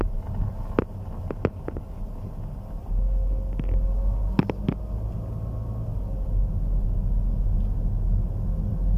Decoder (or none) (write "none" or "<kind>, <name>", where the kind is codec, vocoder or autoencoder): none